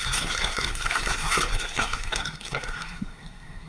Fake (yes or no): yes